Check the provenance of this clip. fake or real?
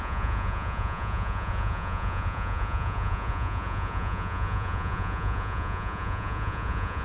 fake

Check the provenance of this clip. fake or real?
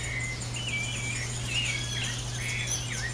real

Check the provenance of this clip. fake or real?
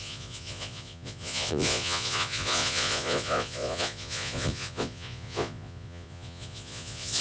fake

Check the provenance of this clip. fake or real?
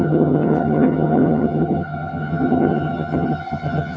fake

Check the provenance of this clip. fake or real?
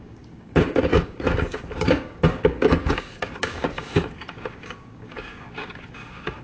fake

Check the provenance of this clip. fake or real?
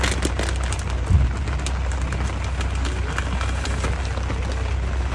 real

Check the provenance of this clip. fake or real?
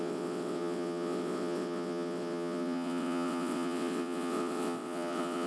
fake